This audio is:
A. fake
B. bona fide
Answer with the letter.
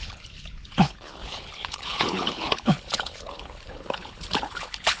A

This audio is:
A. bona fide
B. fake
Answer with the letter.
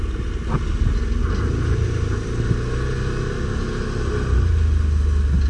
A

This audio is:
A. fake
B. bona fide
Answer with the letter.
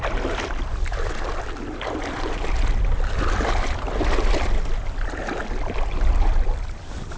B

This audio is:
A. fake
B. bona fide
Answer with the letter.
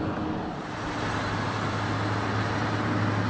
B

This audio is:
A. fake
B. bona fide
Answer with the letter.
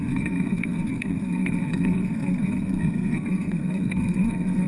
A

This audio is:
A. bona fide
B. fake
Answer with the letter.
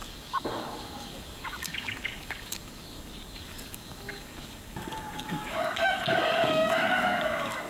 B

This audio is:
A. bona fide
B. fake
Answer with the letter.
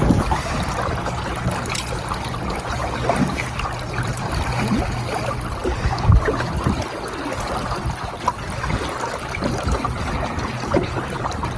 A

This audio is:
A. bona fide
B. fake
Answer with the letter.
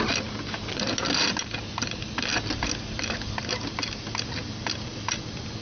A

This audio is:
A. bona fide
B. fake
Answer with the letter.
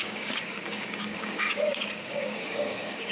B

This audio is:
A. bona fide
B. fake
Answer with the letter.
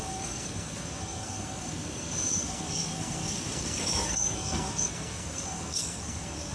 B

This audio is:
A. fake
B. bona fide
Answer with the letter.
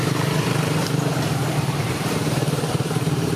A